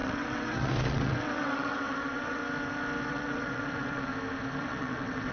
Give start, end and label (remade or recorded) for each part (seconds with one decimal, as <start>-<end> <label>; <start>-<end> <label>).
0.0-2.4 remade; 2.4-3.1 recorded; 3.1-4.1 remade; 4.1-4.6 recorded; 4.6-5.3 remade

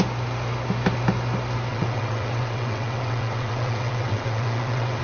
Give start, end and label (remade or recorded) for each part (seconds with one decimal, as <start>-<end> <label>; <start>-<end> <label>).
0.0-1.7 recorded; 1.7-5.0 remade

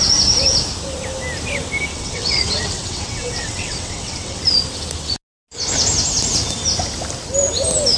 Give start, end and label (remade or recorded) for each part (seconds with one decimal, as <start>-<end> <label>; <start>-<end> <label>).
0.0-1.9 recorded; 1.9-4.4 remade; 4.4-8.0 recorded

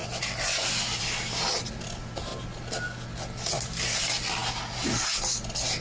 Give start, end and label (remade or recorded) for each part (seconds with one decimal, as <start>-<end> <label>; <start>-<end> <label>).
0.0-5.8 recorded